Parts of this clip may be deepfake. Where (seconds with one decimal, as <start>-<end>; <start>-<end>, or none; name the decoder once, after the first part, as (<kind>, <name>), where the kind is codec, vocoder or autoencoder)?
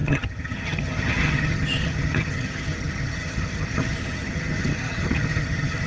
0.0-5.9 (vocoder, HiFi-GAN)